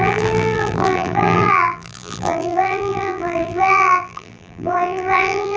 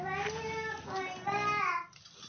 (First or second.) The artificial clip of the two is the first